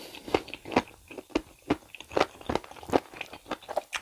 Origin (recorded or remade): recorded